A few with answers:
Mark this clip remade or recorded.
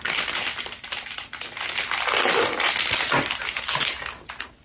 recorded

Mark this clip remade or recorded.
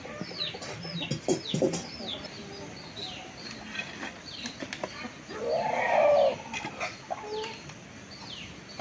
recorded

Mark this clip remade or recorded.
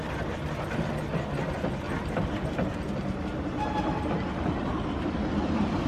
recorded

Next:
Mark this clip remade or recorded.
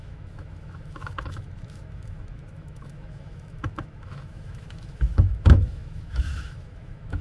remade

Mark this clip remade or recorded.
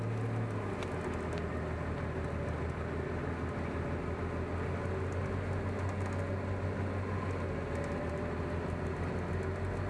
recorded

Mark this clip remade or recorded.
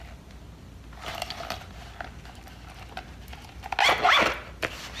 recorded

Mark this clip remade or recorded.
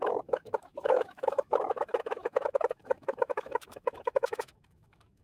remade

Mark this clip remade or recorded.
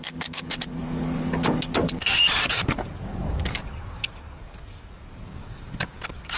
remade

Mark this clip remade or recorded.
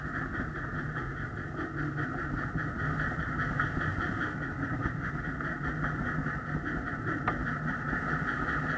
recorded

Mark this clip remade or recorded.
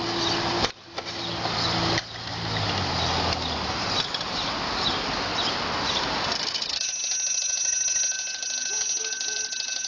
recorded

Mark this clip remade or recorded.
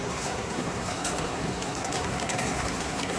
remade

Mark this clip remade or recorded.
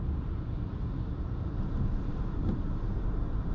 remade